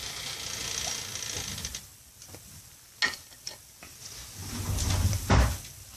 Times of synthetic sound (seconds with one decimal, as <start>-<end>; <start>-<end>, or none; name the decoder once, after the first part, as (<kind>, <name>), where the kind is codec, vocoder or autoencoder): none